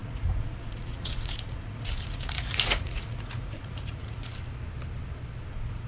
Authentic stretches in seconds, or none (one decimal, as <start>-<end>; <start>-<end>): 4.3-5.5